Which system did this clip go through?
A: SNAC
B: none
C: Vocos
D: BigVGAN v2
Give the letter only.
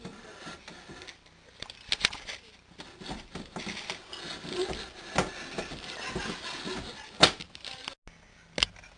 B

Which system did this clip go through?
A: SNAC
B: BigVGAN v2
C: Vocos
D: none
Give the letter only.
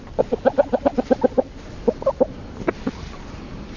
D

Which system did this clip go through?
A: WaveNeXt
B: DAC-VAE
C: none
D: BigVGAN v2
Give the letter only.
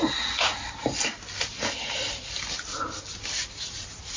C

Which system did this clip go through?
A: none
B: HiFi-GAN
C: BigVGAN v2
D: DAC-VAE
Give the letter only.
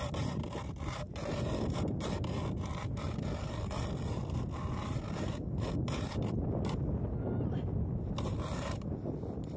A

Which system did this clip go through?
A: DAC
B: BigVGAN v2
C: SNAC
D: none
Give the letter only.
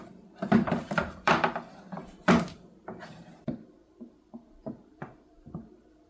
B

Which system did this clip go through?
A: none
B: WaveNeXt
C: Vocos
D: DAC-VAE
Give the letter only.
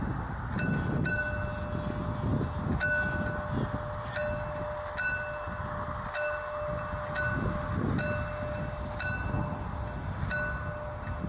A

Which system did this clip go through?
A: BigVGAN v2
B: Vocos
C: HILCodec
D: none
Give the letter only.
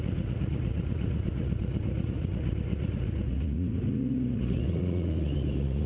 B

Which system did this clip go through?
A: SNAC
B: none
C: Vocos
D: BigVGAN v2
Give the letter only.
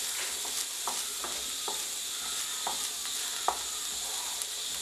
B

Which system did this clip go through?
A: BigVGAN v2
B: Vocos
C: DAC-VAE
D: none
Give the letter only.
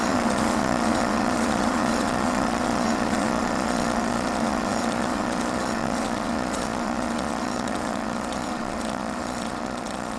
B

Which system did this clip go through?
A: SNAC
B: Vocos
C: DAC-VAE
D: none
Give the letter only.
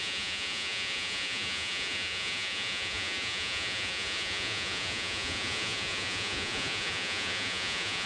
B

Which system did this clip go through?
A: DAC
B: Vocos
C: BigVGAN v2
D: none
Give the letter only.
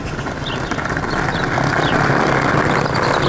D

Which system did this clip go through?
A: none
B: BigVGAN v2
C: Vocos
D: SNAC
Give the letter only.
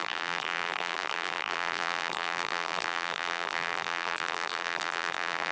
B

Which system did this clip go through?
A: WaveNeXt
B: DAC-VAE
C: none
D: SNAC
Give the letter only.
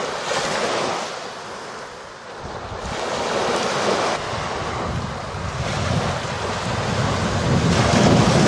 C